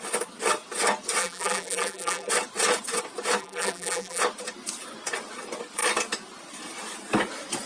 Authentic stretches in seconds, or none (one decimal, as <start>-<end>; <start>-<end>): 0.0-1.2; 2.3-3.4; 4.2-7.7